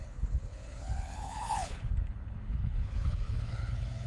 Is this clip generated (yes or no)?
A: yes